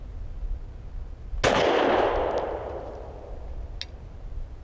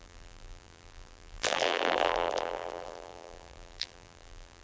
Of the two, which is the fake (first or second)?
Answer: second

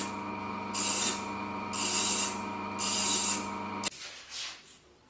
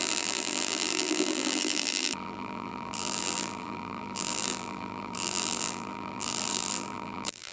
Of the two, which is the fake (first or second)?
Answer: second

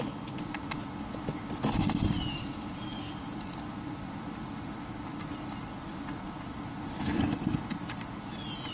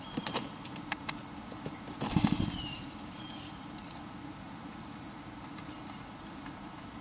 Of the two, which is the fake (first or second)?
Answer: second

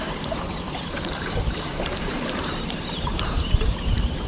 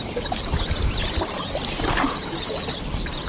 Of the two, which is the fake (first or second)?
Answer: first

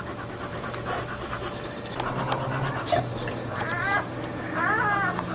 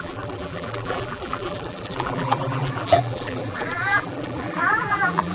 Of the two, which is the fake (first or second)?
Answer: second